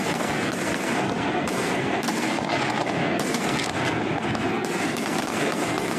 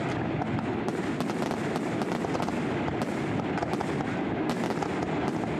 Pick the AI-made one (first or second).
first